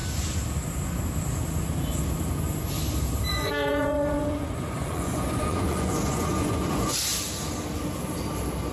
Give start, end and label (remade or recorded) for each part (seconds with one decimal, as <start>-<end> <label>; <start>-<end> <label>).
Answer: 0.0-3.3 recorded; 3.3-6.9 remade; 6.9-8.7 recorded